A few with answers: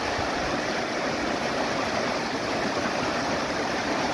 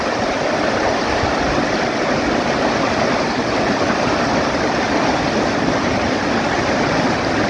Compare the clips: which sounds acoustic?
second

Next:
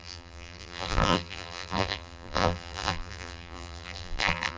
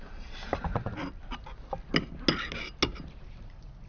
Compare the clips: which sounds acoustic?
second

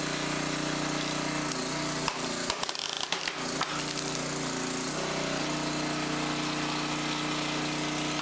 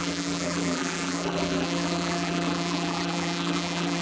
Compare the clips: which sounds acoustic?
first